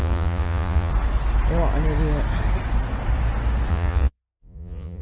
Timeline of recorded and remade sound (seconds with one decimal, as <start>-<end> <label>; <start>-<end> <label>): 0.0-0.9 remade; 0.9-3.7 recorded; 3.7-5.0 remade